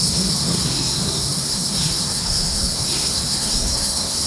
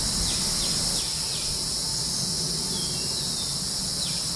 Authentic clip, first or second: second